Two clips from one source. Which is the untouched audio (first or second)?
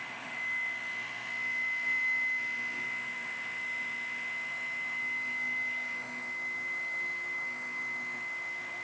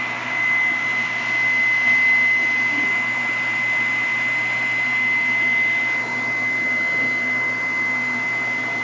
second